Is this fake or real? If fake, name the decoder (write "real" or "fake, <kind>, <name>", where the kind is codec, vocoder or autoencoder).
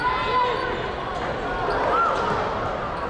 real